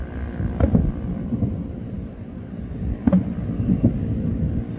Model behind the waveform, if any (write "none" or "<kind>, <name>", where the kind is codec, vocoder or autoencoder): none